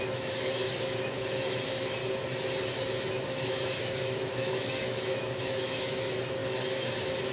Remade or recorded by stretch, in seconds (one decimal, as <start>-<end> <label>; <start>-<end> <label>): 0.0-2.0 remade; 2.0-2.7 recorded; 2.7-7.3 remade